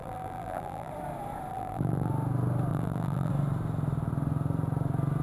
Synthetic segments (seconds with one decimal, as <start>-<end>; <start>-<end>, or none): 0.0-0.9; 1.5-2.1; 2.7-3.3